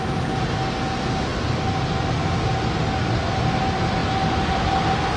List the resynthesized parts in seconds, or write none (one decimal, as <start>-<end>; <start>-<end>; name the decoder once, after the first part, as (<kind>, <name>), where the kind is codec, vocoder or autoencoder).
none